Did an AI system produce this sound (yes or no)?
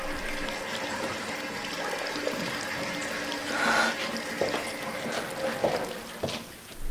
no